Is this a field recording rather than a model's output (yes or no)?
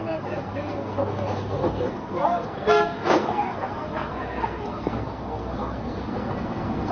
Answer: no